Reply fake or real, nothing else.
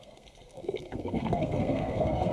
fake